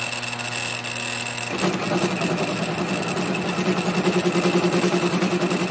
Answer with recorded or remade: recorded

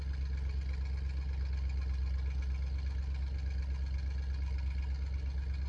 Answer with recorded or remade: recorded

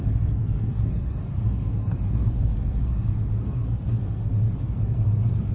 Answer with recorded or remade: remade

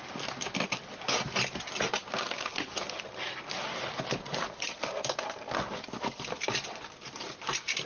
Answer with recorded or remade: recorded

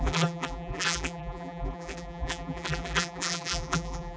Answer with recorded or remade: remade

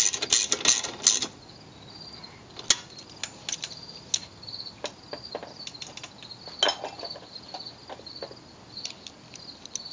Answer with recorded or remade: recorded